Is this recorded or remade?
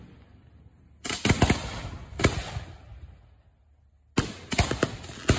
recorded